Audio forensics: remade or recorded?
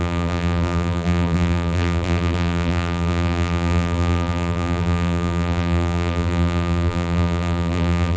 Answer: remade